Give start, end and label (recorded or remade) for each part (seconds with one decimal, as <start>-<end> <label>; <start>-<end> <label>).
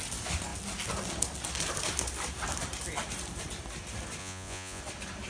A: 0.0-4.2 recorded; 4.2-4.8 remade; 4.8-5.3 recorded